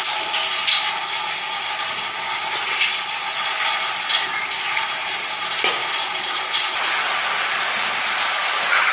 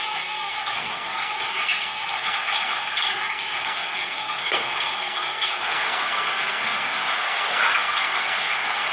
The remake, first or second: second